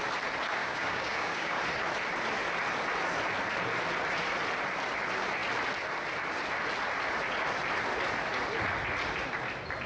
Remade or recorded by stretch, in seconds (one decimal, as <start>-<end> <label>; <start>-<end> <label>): 0.0-0.6 recorded; 0.6-1.6 remade; 1.6-9.9 recorded